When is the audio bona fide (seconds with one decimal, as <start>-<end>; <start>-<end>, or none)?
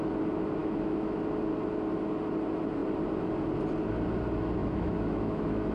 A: 0.0-0.6; 1.2-4.6